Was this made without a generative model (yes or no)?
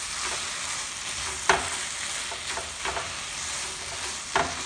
yes